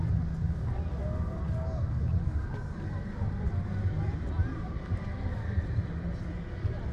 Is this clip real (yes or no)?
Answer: yes